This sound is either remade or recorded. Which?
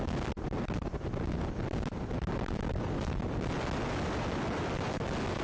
recorded